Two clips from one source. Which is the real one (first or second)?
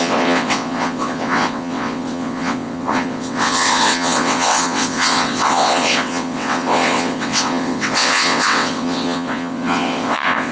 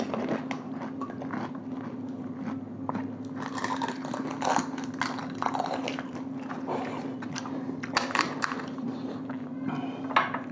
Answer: second